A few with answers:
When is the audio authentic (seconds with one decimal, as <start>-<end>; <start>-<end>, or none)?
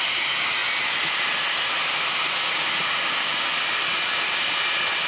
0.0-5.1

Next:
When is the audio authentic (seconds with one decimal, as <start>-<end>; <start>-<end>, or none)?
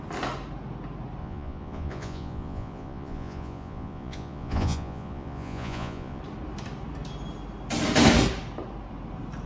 0.0-1.2; 6.2-9.5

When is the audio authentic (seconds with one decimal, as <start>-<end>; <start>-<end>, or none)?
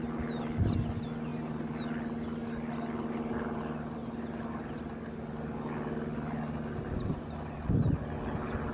0.0-8.7